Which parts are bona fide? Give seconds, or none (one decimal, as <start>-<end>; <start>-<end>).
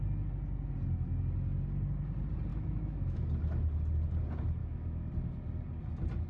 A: 0.0-2.5; 3.3-4.6; 5.1-6.3